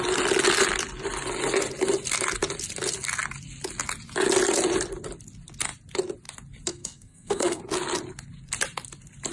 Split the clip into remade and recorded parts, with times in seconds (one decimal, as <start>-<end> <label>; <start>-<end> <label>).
0.0-6.7 recorded; 6.7-7.6 remade; 7.6-9.3 recorded